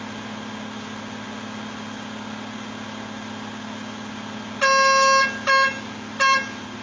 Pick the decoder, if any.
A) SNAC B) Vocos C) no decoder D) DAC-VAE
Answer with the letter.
C